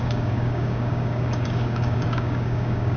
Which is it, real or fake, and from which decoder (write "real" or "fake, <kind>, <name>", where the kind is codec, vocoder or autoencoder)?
fake, codec, DAC